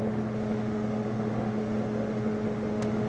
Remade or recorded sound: remade